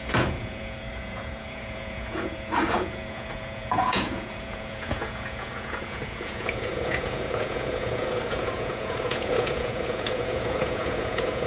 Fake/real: fake